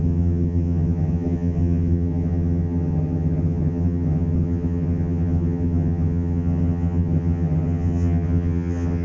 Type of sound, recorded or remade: remade